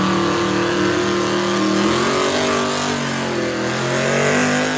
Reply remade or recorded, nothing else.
recorded